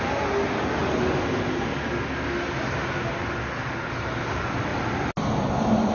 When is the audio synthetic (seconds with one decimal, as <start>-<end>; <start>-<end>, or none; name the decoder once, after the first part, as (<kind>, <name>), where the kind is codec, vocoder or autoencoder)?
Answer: none